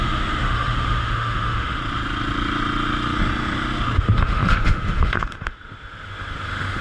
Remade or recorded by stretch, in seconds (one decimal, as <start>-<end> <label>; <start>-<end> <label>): 0.0-1.8 remade; 1.8-4.0 recorded; 4.0-6.8 remade